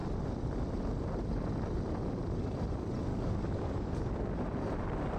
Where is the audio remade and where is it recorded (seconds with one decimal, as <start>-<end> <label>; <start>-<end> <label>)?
0.0-3.1 recorded; 3.1-4.1 remade; 4.1-5.2 recorded